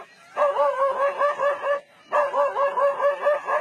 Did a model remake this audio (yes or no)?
no